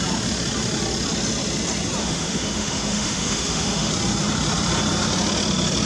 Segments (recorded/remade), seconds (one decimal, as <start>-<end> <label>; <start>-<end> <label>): 0.0-2.0 recorded; 2.0-3.9 remade; 3.9-5.9 recorded